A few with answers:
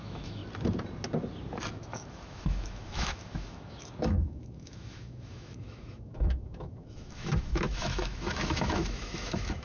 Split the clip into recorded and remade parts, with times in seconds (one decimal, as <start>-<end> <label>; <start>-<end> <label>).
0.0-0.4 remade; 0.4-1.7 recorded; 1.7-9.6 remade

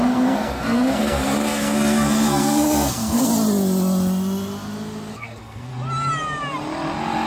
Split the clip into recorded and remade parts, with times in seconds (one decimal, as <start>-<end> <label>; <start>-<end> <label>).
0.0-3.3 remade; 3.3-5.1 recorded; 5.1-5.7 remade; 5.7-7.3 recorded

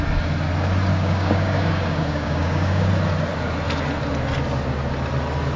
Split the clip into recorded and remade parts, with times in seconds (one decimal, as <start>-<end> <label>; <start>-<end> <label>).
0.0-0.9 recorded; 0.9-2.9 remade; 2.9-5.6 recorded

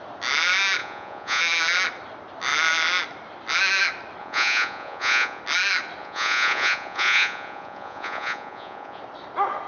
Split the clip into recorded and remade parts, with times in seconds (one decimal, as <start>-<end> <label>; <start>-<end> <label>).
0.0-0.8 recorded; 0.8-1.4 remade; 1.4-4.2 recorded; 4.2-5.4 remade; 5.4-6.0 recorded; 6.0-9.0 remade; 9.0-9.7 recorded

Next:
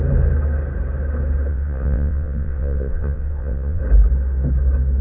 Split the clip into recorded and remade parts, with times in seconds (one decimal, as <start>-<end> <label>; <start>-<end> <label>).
0.0-1.5 recorded; 1.5-3.8 remade; 3.8-5.0 recorded